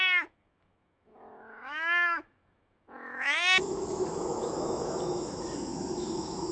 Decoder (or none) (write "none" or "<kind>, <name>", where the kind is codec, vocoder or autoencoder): autoencoder, DAC-VAE